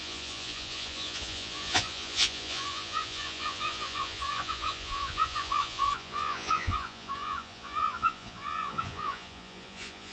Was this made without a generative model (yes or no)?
no